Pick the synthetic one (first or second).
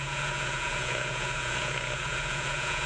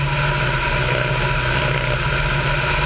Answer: first